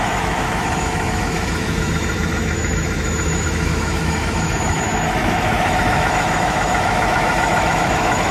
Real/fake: fake